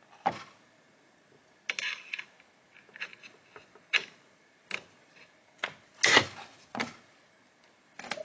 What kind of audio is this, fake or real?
real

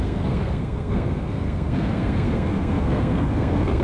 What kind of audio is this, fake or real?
fake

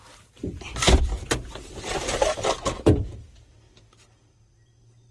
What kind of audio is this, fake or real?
real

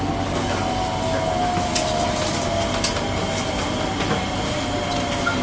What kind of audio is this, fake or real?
real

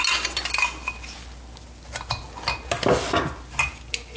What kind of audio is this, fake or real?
real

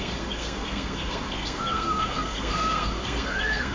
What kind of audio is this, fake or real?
fake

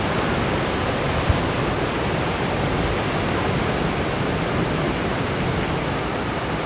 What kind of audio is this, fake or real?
real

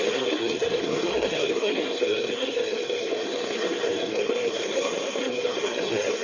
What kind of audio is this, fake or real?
fake